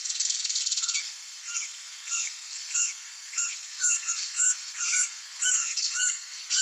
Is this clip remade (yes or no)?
yes